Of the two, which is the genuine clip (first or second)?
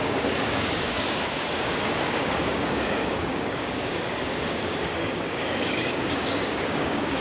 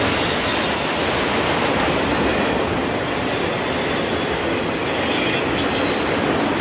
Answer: second